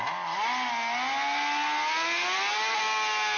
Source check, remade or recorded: recorded